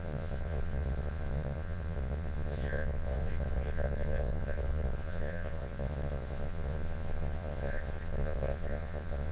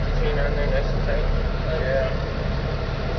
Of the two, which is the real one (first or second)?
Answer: second